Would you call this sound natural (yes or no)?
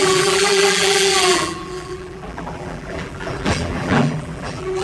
no